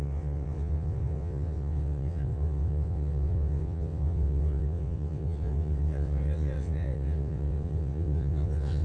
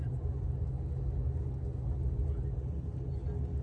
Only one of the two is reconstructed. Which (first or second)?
first